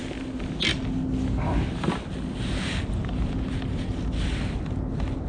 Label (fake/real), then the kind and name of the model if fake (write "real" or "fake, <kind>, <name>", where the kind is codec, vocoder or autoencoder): real